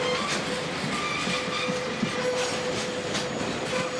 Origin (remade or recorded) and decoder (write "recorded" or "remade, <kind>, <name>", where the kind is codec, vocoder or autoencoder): recorded